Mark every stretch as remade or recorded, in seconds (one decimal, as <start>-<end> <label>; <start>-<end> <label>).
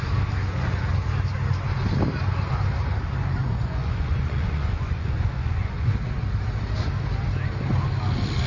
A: 0.0-3.4 recorded; 3.4-5.9 remade; 5.9-8.5 recorded